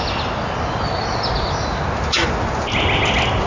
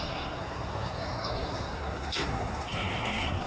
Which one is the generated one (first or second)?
second